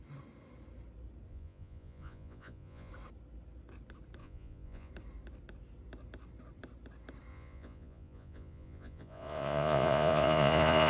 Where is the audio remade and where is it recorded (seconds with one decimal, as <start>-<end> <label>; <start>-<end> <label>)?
0.0-1.3 recorded; 1.3-2.9 remade; 2.9-4.2 recorded; 4.2-4.9 remade; 4.9-7.3 recorded; 7.3-10.9 remade